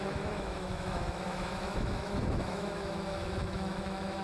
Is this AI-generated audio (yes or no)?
yes